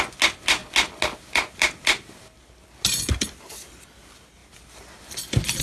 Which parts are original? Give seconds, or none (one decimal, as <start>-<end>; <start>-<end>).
0.0-5.6

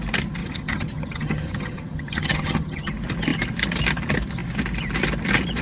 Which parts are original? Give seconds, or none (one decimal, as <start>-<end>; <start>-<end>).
0.0-0.4; 2.9-5.6

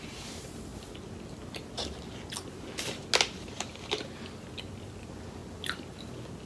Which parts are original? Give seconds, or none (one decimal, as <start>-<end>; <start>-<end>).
0.0-6.5

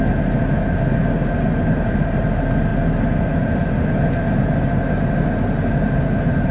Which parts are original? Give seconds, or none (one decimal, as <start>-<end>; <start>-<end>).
0.0-6.5

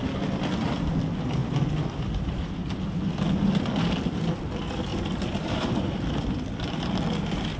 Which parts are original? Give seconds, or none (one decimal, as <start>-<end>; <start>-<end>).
0.0-1.4; 3.6-4.9; 6.5-7.6

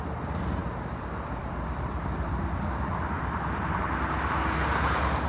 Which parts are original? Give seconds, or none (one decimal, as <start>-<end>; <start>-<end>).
0.0-0.6; 3.8-5.3